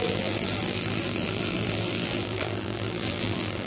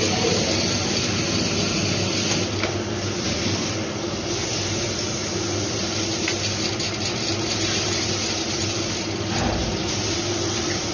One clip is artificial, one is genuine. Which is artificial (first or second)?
first